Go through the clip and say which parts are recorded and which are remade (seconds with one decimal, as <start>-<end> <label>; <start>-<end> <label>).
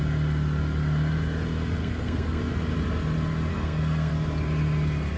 0.0-1.8 recorded; 1.8-2.4 remade; 2.4-3.5 recorded; 3.5-4.1 remade; 4.1-5.2 recorded